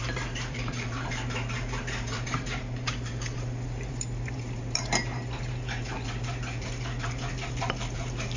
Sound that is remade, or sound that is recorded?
remade